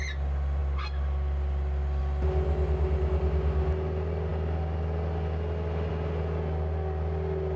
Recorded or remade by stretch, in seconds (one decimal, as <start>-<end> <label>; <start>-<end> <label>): 0.0-7.6 recorded